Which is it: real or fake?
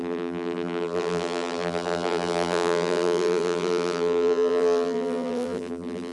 fake